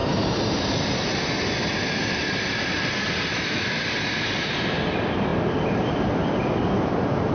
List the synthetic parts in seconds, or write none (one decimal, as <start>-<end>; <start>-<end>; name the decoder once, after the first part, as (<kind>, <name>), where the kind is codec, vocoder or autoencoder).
3.3-3.8 (autoencoder, DAC-VAE)